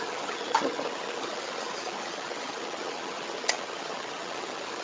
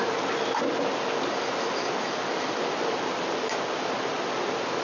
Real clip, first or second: second